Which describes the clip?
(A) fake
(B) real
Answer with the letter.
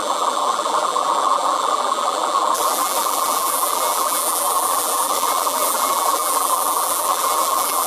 A